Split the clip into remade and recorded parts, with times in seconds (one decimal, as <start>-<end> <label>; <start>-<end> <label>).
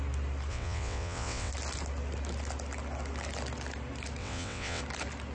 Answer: 0.0-0.5 recorded; 0.5-1.5 remade; 1.5-4.2 recorded; 4.2-4.8 remade; 4.8-5.3 recorded